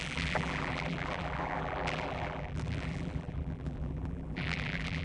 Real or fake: fake